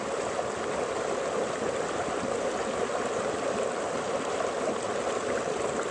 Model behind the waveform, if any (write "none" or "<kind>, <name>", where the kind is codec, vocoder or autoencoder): none